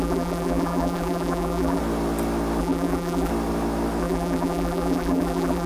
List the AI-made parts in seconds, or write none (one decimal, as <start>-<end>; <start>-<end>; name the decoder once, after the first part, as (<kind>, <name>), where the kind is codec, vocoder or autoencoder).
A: 0.0-1.8 (vocoder, BigVGAN v2); 2.6-3.3; 4.0-5.7